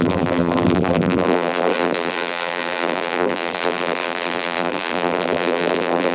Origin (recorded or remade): remade